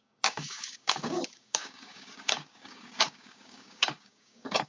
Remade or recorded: remade